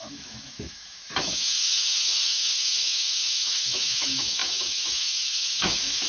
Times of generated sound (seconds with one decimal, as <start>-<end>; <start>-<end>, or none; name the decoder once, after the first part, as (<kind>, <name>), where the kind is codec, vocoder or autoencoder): 0.0-6.1 (autoencoder, DAC-VAE)

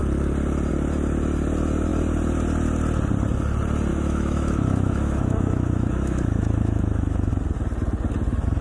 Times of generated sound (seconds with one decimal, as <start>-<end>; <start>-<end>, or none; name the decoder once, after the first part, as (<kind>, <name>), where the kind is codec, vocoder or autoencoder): 3.9-7.3 (autoencoder, DAC-VAE)

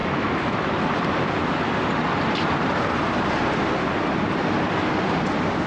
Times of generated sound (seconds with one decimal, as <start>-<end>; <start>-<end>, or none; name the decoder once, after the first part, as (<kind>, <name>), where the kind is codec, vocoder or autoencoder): 0.0-0.7 (autoencoder, DAC-VAE)